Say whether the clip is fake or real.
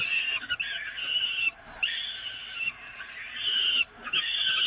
real